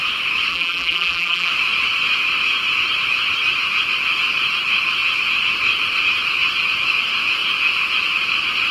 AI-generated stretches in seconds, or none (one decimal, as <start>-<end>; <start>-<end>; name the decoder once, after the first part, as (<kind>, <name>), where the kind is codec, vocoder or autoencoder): 0.5-1.5 (vocoder, BigVGAN v2)